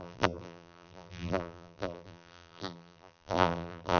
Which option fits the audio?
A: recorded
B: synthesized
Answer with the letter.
B